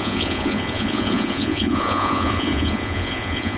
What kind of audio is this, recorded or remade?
remade